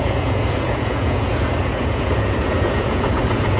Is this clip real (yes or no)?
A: no